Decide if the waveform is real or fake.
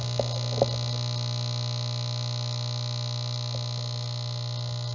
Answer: real